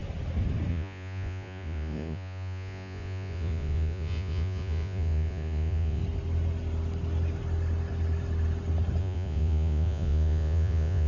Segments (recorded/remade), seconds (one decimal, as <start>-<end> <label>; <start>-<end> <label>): 0.0-0.7 recorded; 0.7-6.0 remade; 6.0-9.0 recorded; 9.0-11.1 remade